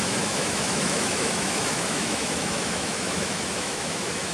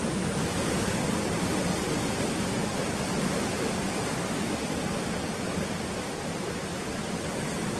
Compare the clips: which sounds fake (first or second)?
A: first